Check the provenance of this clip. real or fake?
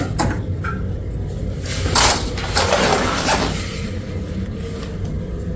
real